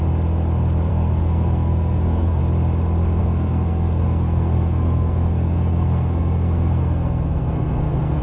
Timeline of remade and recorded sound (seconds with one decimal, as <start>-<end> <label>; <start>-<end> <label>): 0.0-0.9 recorded; 0.9-2.4 remade; 2.4-3.2 recorded; 3.2-8.2 remade